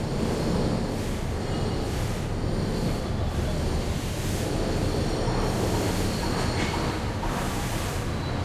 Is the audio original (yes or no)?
yes